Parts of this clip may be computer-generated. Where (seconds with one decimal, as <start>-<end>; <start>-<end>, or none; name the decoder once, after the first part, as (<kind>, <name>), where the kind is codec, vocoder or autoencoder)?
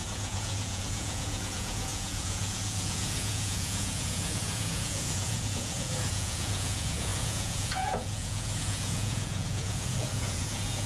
0.0-10.9 (vocoder, Vocos)